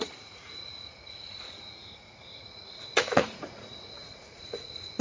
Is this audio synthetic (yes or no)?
yes